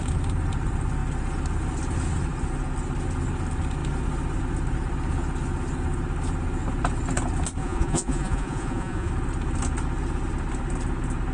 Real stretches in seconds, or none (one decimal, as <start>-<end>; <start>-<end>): 0.0-7.6; 9.1-11.3